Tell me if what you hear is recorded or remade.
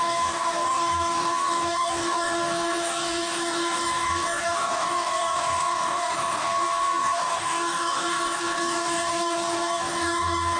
remade